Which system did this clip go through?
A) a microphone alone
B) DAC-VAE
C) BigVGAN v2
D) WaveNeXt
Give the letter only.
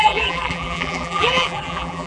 C